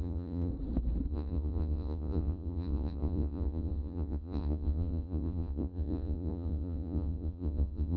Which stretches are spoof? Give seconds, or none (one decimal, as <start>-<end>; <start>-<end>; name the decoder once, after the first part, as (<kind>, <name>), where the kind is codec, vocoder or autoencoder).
0.0-0.5 (vocoder, Vocos); 1.1-8.0

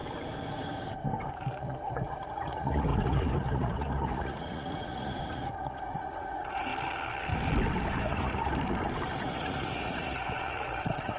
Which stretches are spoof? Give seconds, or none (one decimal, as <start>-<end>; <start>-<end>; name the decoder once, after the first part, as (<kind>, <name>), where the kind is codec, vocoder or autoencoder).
1.3-6.7 (vocoder, Vocos); 8.0-8.5; 9.2-11.2

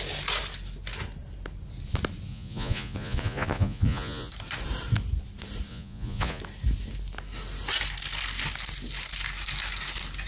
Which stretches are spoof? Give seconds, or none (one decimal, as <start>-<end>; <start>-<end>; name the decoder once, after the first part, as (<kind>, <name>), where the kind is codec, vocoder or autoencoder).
2.3-4.3 (vocoder, Vocos); 5.7-6.4

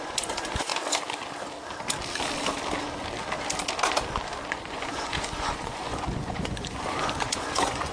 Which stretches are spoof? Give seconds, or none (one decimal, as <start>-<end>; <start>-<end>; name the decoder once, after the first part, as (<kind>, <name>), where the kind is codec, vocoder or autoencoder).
0.0-0.7 (vocoder, Vocos); 4.5-7.9

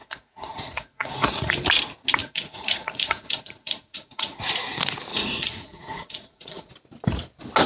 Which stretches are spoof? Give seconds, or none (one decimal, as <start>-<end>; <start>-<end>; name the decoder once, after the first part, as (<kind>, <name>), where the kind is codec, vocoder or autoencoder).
0.0-1.5 (vocoder, Vocos); 2.2-4.4; 5.1-6.7

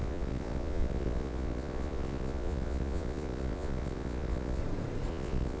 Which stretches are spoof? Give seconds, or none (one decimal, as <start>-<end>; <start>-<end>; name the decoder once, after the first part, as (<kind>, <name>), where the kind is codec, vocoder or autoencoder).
0.0-4.6 (vocoder, Vocos); 5.1-5.6

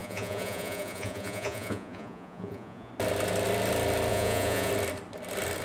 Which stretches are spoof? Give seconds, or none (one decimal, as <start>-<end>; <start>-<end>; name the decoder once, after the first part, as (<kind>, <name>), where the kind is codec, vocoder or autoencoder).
0.0-2.9 (vocoder, Vocos); 4.1-4.7